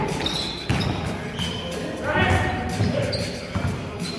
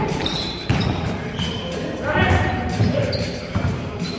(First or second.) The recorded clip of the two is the first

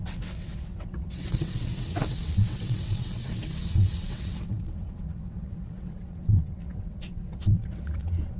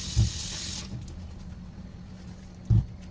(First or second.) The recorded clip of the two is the second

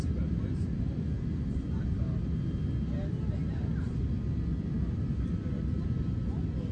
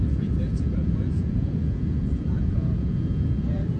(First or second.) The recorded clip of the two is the first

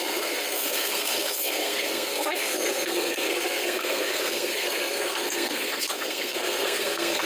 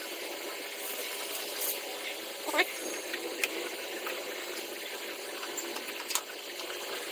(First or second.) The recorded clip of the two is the second